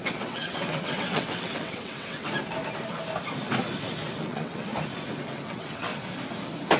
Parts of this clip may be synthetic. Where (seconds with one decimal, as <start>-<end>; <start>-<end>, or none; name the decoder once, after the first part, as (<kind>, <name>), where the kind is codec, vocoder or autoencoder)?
0.0-2.3 (vocoder, WaveNeXt); 4.2-4.7; 5.2-5.9